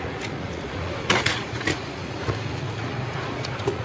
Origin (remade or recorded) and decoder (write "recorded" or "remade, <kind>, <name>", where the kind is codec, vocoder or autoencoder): remade, vocoder, Vocos